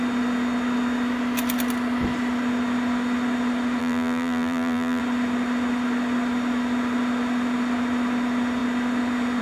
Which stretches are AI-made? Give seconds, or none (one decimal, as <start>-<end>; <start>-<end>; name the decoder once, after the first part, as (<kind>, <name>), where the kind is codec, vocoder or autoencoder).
3.8-5.0 (vocoder, BigVGAN v2)